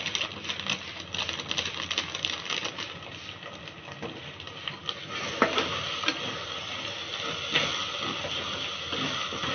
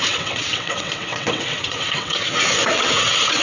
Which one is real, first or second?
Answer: first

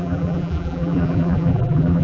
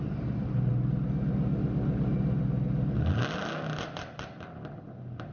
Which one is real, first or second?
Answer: second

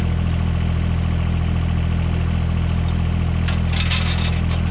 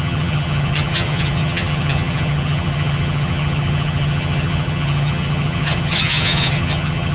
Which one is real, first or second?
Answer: first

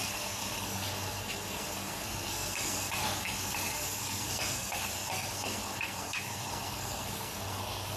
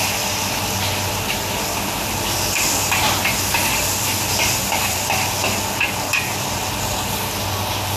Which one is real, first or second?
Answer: second